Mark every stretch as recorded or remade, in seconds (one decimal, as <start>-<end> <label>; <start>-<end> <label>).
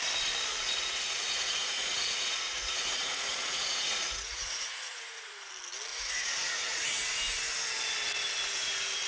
0.0-0.5 recorded; 0.5-5.5 remade; 5.5-5.9 recorded; 5.9-7.1 remade; 7.1-9.1 recorded